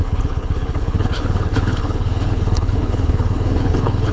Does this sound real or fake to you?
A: fake